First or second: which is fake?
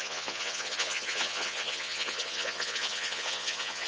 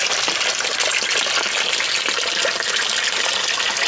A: first